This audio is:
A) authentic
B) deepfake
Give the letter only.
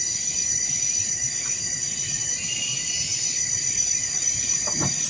B